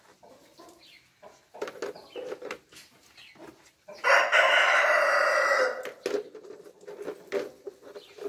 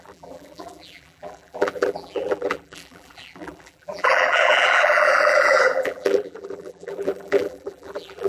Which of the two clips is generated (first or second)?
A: second